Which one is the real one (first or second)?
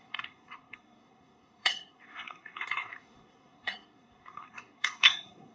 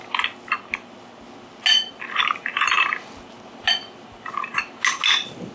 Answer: second